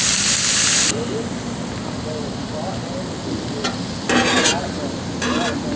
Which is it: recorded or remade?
recorded